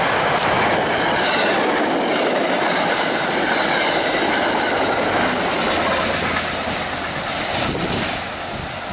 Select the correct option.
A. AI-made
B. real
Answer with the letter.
B